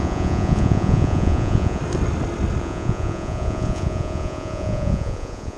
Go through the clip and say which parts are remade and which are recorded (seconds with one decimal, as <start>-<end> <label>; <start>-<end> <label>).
0.0-1.8 remade; 1.8-2.6 recorded; 2.6-5.6 remade